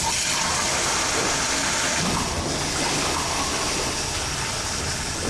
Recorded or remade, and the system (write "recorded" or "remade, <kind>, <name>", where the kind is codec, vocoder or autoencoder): recorded